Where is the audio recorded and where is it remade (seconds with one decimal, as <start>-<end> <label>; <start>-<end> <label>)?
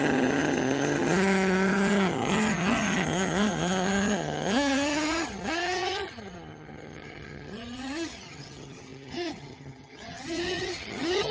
0.0-11.3 remade